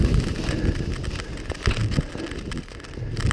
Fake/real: real